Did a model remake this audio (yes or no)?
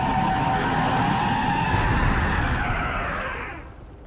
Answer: no